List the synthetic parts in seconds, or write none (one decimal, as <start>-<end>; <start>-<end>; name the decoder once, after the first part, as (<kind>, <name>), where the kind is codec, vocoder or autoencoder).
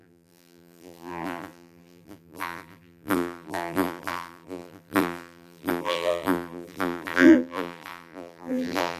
0.0-9.0 (vocoder, BigVGAN v2)